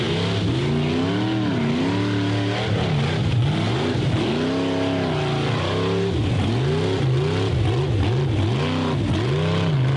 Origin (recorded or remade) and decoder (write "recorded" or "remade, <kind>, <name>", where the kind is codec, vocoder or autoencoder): recorded